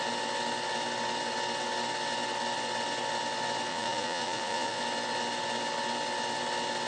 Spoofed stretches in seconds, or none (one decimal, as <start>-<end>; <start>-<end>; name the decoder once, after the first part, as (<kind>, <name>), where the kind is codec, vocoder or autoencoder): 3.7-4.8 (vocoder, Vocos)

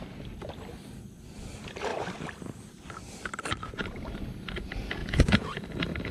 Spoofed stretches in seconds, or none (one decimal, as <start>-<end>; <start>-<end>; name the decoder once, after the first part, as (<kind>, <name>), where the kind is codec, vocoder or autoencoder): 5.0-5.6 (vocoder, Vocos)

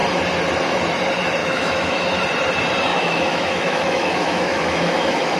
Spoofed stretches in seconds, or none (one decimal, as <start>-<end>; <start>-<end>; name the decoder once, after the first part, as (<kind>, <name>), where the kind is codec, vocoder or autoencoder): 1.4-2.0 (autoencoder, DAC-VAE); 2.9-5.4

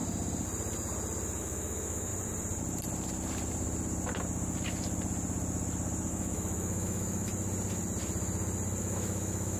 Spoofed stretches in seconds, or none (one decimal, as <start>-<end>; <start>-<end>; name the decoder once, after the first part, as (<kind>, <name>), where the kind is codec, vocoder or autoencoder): 1.4-2.1 (autoencoder, DAC-VAE); 6.1-7.3; 8.8-9.6

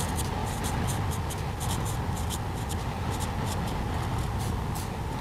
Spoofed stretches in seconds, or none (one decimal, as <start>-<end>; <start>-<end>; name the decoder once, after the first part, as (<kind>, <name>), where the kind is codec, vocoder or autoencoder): none